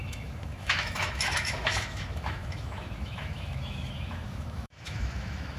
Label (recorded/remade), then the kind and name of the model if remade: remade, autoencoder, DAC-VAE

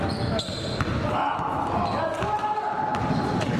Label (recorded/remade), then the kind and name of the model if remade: recorded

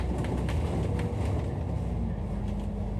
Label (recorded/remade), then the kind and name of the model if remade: recorded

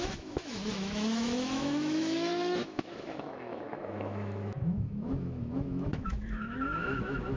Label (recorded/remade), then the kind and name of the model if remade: remade, autoencoder, DAC-VAE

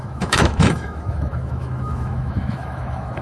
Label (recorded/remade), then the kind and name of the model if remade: remade, autoencoder, DAC-VAE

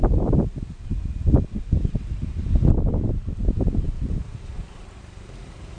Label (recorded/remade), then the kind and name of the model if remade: recorded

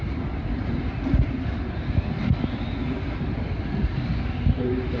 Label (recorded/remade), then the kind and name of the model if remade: recorded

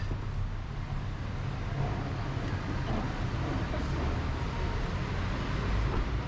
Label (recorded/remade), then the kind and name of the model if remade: recorded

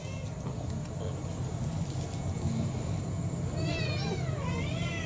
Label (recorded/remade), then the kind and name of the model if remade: recorded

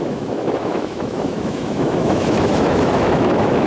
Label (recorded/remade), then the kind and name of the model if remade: remade, autoencoder, DAC-VAE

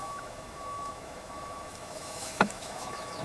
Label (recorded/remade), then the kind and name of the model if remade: remade, autoencoder, DAC-VAE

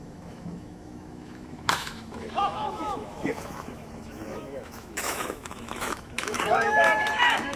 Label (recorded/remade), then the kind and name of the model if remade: remade, autoencoder, DAC-VAE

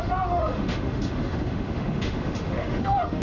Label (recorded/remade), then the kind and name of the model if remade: remade, autoencoder, DAC-VAE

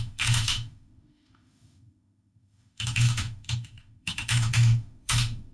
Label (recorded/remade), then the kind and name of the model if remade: remade, autoencoder, DAC-VAE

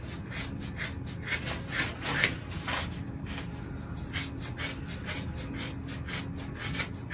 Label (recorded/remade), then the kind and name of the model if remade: recorded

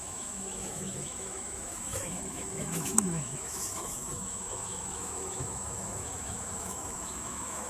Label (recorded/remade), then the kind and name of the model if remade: remade, autoencoder, DAC-VAE